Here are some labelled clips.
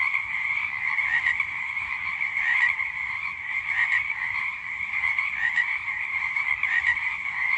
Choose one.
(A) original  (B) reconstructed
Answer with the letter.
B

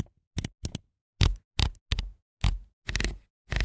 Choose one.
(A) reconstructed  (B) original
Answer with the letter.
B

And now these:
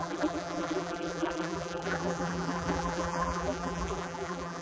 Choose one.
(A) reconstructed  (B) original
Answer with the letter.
A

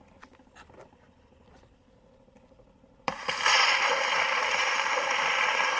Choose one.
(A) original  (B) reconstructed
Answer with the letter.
B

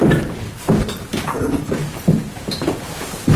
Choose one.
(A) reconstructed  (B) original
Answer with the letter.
A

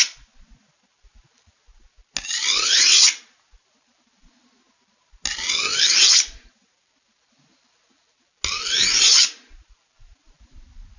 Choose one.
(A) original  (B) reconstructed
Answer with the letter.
A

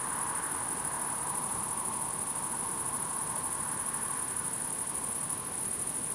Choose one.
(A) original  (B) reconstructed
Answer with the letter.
A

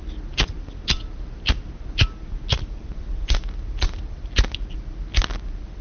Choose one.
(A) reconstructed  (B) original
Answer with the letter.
B